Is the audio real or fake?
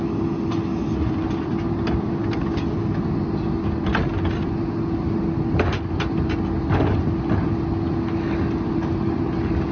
real